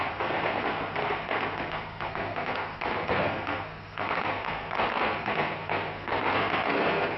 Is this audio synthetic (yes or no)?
yes